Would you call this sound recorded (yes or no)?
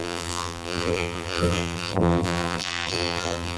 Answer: no